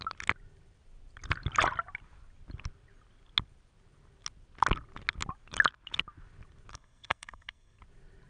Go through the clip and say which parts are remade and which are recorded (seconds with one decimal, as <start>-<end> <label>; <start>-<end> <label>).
0.0-6.7 recorded; 6.7-7.8 remade; 7.8-8.3 recorded